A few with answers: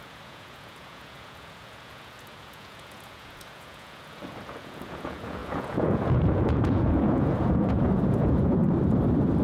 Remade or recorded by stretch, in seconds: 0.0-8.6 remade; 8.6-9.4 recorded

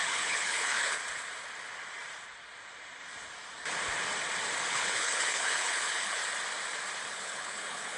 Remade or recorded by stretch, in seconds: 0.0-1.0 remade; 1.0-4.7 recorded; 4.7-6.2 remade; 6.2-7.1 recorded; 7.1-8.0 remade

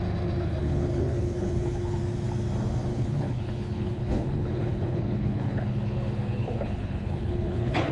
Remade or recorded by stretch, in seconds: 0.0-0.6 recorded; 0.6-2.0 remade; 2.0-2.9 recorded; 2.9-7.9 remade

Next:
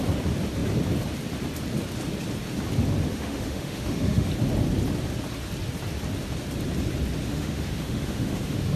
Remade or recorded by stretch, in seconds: 0.0-3.1 recorded; 3.1-4.3 remade; 4.3-7.2 recorded; 7.2-8.8 remade

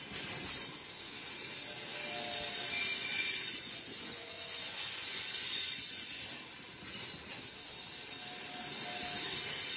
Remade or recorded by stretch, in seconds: 0.0-2.9 recorded; 2.9-6.2 remade; 6.2-9.8 recorded